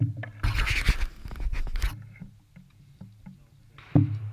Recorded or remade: recorded